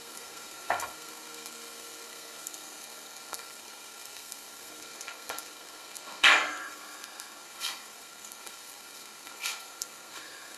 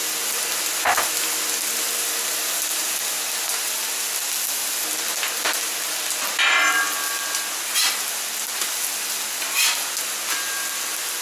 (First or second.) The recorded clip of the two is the second